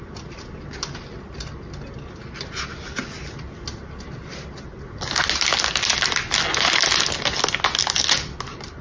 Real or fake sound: real